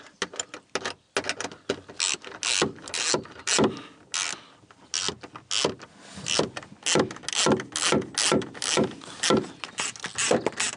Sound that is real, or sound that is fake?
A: real